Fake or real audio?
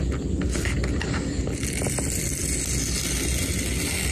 real